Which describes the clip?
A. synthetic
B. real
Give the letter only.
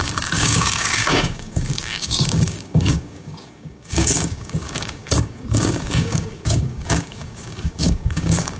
A